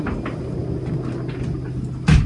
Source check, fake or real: real